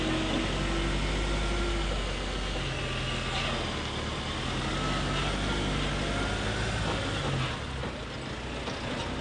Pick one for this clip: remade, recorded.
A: recorded